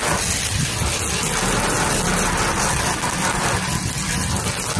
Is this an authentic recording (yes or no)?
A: yes